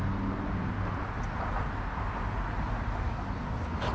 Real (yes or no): yes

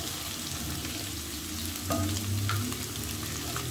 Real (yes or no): yes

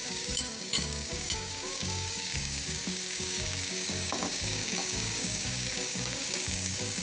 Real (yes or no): no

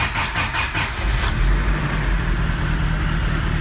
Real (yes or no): yes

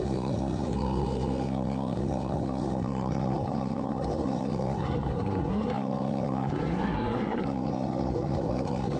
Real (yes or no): no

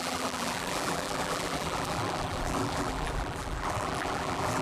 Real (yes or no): no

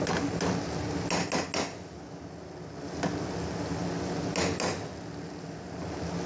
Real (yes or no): yes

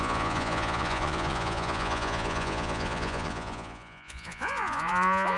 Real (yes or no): no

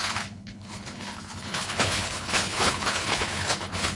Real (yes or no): no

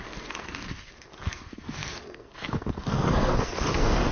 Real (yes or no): no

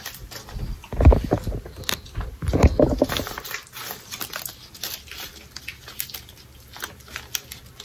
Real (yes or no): yes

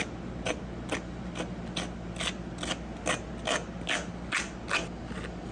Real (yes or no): yes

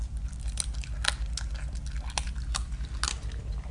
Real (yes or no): yes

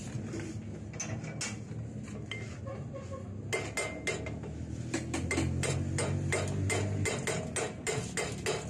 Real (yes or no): yes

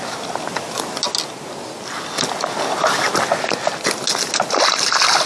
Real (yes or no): yes